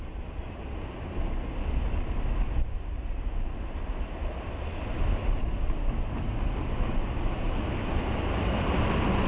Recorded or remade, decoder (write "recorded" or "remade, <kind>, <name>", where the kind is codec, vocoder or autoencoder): recorded